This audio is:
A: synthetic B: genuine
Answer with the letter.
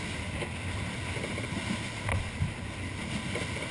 B